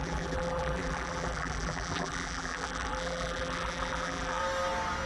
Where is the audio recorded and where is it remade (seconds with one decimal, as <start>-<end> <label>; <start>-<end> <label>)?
0.0-4.4 remade; 4.4-5.1 recorded